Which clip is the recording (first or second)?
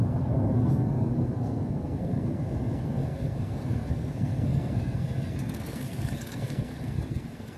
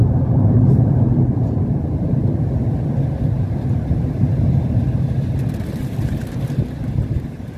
second